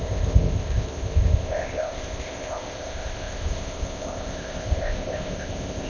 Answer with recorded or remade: remade